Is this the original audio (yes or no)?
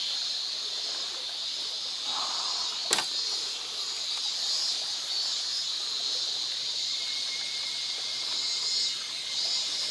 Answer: yes